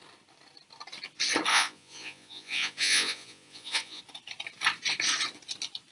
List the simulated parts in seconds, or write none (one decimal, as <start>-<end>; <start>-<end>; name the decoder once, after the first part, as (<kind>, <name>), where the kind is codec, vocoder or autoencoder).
1.5-4.0 (vocoder, Vocos)